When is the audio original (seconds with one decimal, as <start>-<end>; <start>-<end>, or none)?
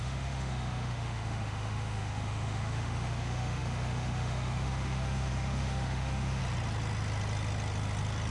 6.4-8.3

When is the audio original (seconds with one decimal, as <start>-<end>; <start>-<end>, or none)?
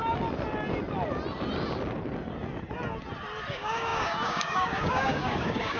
0.0-3.5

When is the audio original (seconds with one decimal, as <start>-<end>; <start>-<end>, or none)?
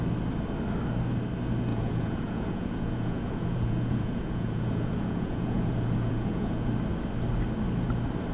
0.0-1.7; 6.7-8.3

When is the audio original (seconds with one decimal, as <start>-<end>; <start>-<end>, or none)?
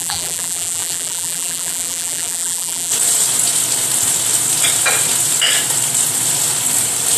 2.9-7.2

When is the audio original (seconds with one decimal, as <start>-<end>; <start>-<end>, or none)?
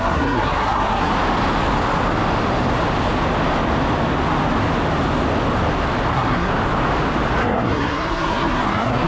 1.1-6.1; 6.5-7.4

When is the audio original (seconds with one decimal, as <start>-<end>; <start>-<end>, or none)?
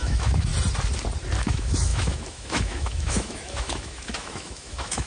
0.5-1.4